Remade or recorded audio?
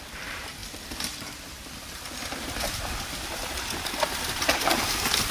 remade